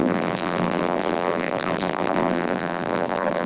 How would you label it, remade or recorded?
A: remade